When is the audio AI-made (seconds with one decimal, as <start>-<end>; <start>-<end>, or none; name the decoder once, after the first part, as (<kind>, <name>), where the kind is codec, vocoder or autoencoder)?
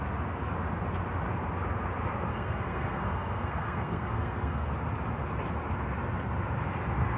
2.3-4.7 (codec, SNAC)